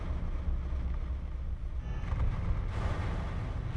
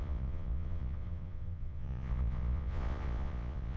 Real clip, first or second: first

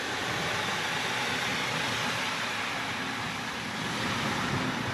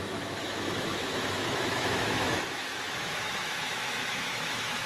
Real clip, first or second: first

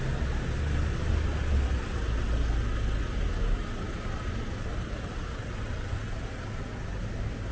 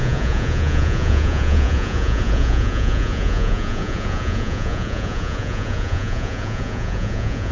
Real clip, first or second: first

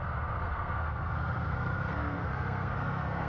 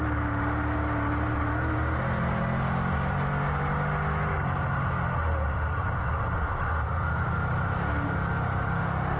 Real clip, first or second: second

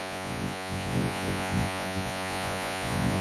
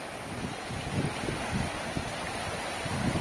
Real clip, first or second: second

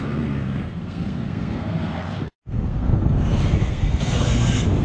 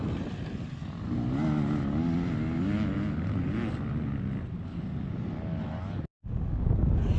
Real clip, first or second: second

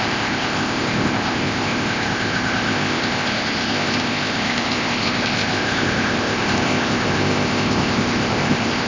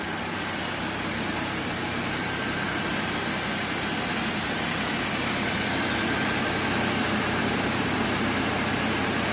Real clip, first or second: second